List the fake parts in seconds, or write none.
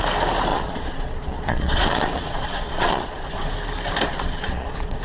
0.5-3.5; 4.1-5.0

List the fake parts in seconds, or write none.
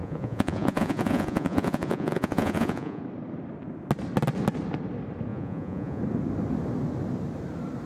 0.0-3.0; 5.3-6.0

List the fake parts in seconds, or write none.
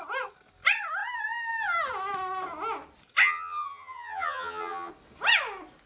3.2-4.9